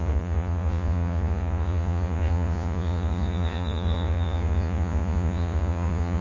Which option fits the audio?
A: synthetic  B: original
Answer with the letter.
A